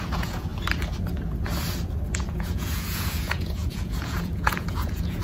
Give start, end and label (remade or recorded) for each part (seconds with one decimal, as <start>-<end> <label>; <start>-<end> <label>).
0.0-0.5 remade; 0.5-2.1 recorded; 2.1-5.2 remade